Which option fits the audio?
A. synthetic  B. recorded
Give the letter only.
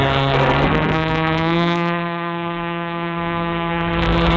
A